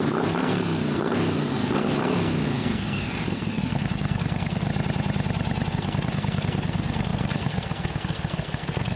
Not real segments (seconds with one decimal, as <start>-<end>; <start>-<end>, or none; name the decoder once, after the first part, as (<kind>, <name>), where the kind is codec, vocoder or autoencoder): 0.0-4.7 (codec, SNAC); 5.7-9.0